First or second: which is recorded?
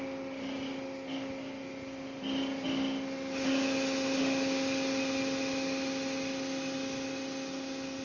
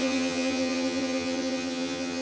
first